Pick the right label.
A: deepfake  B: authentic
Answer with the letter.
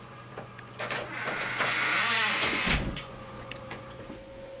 A